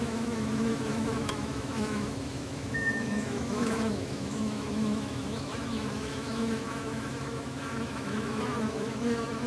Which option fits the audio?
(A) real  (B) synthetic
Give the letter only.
B